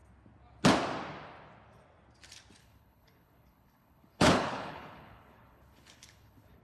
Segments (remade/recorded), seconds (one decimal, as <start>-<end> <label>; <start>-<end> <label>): 0.0-2.6 recorded; 2.6-6.6 remade